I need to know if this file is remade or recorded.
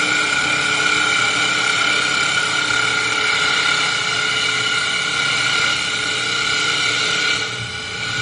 recorded